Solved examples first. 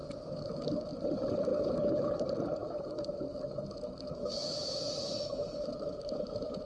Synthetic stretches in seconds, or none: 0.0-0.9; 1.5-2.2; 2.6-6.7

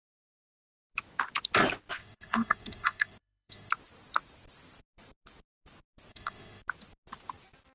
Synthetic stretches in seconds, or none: 2.0-3.7; 6.1-6.6

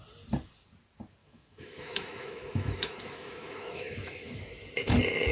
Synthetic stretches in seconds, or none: 1.2-4.4

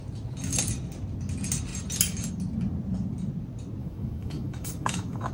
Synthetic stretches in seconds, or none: 3.8-5.3

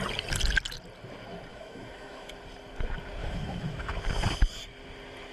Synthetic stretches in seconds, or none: 1.5-2.3; 3.2-3.9

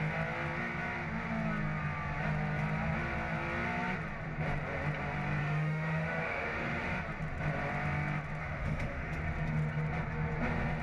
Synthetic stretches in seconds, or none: 5.4-6.9; 8.4-9.2

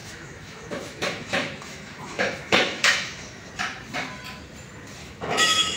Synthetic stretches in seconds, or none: 0.0-3.5; 5.0-5.8